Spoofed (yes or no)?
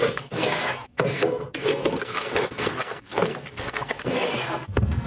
yes